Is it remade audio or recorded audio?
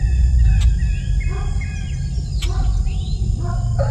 recorded